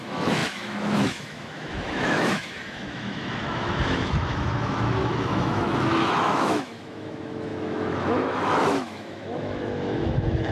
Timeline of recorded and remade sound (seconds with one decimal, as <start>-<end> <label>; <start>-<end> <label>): 0.0-10.5 remade